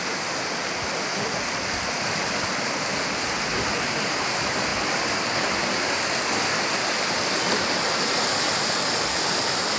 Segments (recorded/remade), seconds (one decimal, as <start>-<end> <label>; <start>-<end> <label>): 0.0-9.8 recorded